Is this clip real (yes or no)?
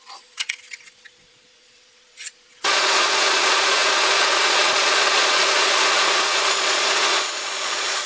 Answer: no